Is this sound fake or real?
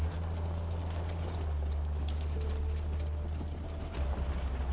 real